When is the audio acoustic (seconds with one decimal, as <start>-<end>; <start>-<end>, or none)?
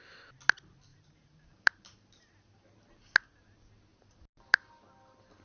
0.0-0.9; 2.6-3.9; 4.7-5.4